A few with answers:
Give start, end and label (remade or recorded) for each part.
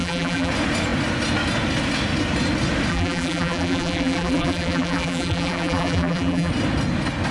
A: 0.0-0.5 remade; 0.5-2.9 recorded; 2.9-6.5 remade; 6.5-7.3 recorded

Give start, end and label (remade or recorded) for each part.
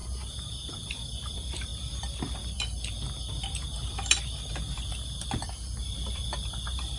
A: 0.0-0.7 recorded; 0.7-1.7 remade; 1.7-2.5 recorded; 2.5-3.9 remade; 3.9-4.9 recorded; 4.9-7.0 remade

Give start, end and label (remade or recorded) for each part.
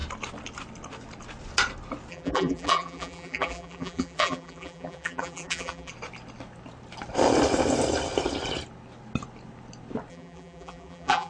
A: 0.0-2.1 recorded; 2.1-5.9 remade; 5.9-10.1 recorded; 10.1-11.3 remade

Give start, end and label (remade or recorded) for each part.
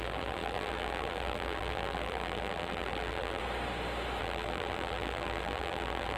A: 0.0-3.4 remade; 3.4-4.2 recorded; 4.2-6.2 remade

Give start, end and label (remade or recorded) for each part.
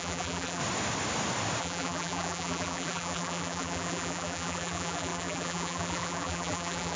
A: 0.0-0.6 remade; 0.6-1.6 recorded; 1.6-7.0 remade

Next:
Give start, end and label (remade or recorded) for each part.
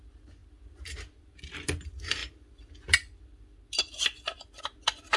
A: 0.0-5.2 recorded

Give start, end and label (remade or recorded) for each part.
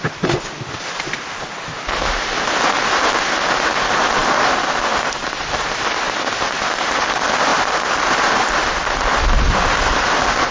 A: 0.0-10.5 recorded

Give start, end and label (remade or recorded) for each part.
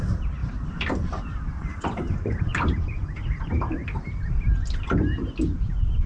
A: 0.0-0.4 recorded; 0.4-3.4 remade; 3.4-6.1 recorded